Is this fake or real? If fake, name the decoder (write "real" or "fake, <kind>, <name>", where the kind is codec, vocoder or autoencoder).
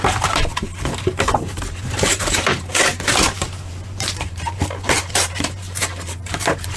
fake, vocoder, BigVGAN v2